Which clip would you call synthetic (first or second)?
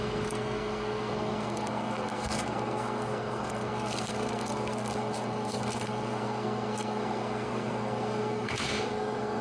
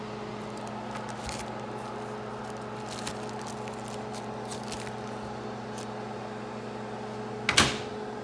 first